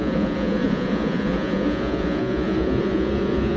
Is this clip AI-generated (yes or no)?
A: yes